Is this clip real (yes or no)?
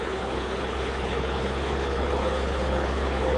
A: no